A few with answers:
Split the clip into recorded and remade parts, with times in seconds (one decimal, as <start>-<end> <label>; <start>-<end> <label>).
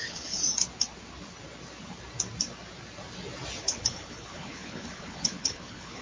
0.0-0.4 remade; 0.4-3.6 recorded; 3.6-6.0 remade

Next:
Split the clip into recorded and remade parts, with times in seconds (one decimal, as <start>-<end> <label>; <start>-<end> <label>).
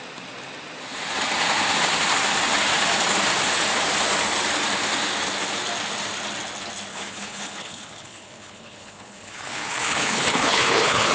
0.0-6.9 recorded; 6.9-11.1 remade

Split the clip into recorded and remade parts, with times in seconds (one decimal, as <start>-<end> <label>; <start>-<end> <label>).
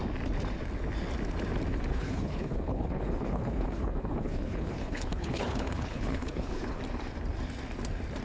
0.0-1.9 recorded; 1.9-6.8 remade; 6.8-8.2 recorded